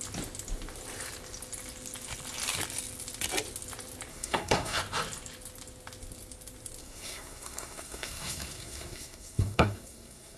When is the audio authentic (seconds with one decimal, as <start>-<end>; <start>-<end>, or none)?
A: 0.0-4.1; 4.8-6.8